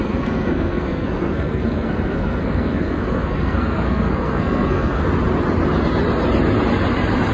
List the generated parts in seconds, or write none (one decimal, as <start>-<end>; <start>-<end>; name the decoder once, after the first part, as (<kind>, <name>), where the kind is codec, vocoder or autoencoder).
0.0-5.0 (codec, SNAC)